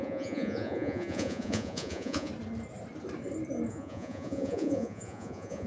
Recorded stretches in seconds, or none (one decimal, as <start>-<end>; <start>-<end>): 2.3-3.7

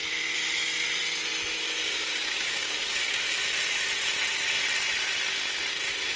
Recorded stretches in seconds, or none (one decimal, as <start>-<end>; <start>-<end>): 0.0-1.8; 3.4-6.2